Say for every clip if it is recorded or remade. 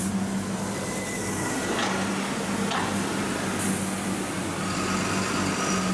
recorded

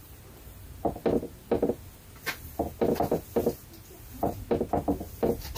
recorded